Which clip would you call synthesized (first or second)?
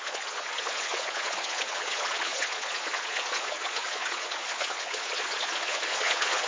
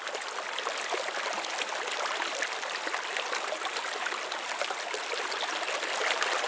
first